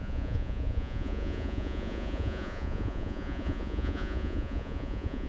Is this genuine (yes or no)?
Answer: no